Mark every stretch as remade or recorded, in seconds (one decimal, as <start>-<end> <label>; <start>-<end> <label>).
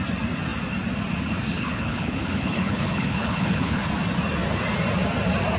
0.0-1.5 recorded; 1.5-3.9 remade; 3.9-5.6 recorded